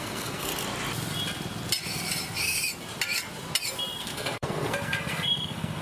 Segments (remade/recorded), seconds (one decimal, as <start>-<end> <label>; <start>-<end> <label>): 0.0-0.5 remade; 0.5-4.0 recorded; 4.0-5.8 remade